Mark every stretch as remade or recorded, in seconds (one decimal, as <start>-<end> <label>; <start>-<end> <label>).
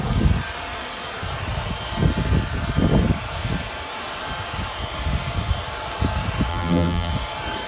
0.0-6.5 recorded; 6.5-7.1 remade; 7.1-7.7 recorded